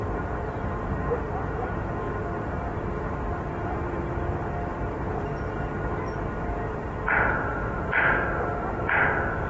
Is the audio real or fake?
fake